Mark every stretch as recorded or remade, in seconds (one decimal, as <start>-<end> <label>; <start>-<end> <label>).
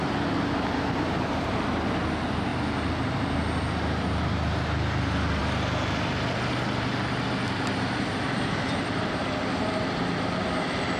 0.0-11.0 recorded